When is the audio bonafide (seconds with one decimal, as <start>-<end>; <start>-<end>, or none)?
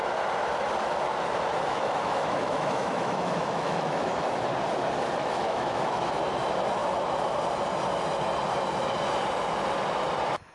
0.0-1.7; 4.4-5.2; 6.2-10.5